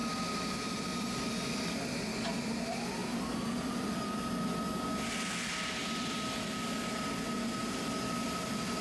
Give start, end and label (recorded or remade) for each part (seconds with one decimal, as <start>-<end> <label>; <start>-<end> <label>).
0.0-2.5 remade; 2.5-3.0 recorded; 3.0-4.3 remade; 4.3-8.8 recorded